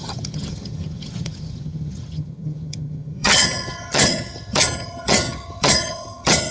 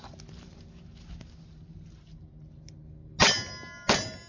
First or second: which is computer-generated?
first